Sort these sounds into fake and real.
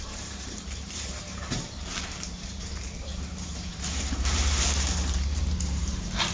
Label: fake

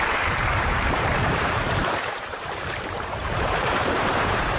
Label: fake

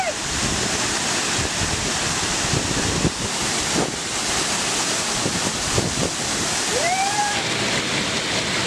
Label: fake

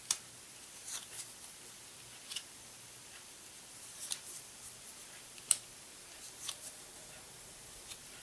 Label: fake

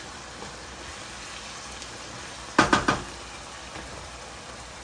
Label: fake